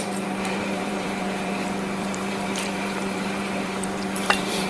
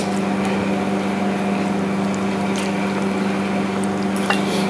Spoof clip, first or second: first